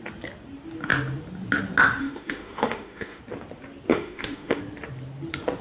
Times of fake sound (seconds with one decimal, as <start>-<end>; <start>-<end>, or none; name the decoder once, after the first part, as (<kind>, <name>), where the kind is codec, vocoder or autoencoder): 2.0-3.2 (autoencoder, DAC-VAE); 3.9-4.6